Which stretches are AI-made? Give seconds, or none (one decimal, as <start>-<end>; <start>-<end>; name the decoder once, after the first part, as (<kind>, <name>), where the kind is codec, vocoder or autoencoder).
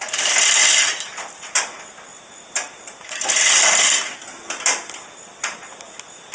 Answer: none